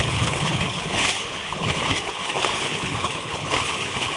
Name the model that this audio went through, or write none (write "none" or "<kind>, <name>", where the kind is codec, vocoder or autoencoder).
codec, HILCodec